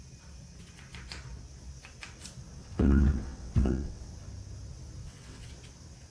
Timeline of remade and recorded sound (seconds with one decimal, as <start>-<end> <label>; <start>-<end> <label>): 0.0-2.6 recorded; 2.6-4.1 remade; 4.1-5.0 recorded; 5.0-5.5 remade; 5.5-6.1 recorded